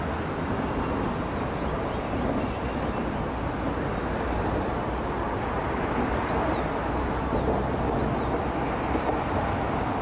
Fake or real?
real